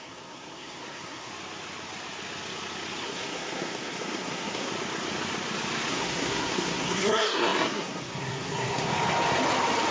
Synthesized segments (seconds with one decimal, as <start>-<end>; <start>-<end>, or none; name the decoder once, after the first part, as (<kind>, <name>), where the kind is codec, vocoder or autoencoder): 0.0-1.3 (codec, SNAC); 3.0-4.7; 5.9-8.9